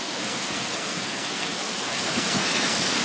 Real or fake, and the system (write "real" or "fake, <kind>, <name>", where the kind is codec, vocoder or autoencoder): fake, codec, SNAC